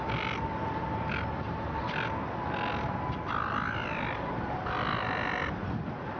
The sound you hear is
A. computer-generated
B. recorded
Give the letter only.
B